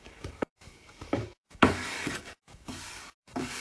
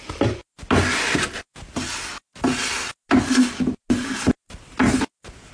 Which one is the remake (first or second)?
first